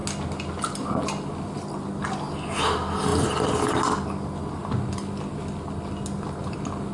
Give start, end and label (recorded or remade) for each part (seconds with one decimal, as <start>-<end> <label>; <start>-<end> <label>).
0.0-6.9 recorded